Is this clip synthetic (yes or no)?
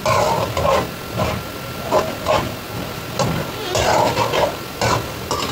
no